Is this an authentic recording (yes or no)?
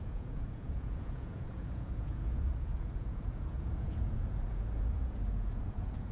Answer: no